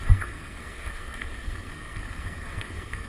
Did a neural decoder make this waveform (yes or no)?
yes